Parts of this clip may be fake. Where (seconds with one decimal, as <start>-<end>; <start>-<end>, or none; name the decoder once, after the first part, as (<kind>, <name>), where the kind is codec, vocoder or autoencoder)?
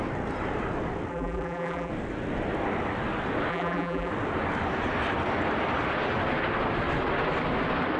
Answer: 1.1-1.9 (vocoder, BigVGAN v2); 3.5-4.1